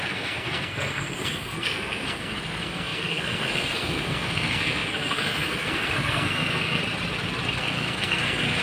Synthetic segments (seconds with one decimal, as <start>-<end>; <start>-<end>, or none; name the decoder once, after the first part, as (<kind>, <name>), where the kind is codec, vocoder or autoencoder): 0.0-6.8 (codec, SNAC); 7.5-8.6